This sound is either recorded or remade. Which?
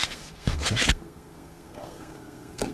remade